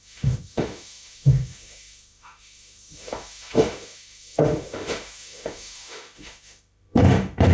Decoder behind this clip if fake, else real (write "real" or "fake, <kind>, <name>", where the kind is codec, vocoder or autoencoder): fake, autoencoder, DAC-VAE